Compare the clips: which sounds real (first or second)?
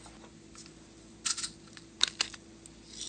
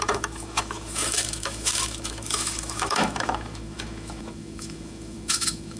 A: first